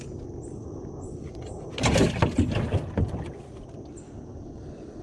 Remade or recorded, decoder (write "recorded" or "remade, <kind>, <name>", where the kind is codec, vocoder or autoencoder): recorded